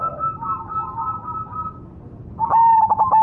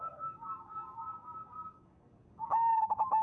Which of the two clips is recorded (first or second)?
first